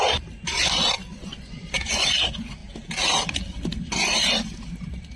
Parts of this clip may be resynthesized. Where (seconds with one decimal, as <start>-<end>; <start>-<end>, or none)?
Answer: 1.1-2.1